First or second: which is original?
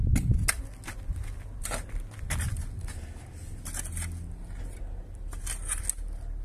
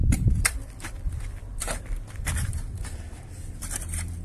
first